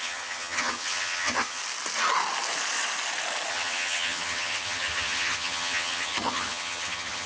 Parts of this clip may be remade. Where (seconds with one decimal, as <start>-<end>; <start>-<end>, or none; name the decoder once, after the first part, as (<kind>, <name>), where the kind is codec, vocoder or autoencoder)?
0.0-1.6 (vocoder, HiFi-GAN); 3.5-7.3